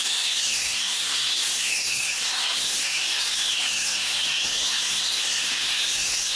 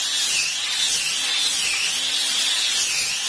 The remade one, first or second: first